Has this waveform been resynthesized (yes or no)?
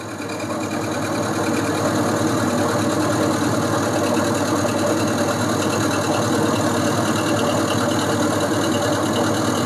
no